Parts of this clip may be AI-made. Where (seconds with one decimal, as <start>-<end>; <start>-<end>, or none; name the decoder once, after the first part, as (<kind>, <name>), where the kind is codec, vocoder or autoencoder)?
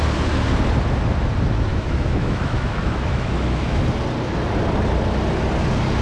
1.7-3.8 (autoencoder, DAC-VAE)